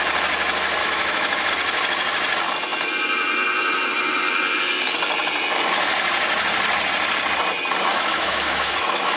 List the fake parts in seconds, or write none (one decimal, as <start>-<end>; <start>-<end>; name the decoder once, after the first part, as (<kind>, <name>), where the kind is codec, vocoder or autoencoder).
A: 0.8-1.5 (autoencoder, DAC-VAE); 7.9-9.2